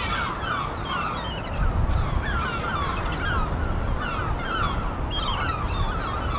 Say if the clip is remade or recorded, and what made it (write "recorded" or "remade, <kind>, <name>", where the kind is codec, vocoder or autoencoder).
recorded